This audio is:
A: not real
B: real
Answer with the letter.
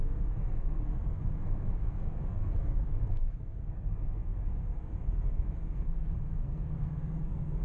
A